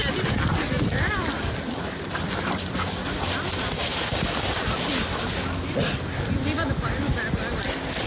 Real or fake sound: real